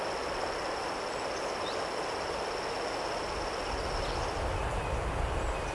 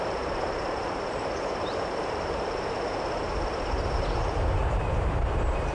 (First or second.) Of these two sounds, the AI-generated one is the second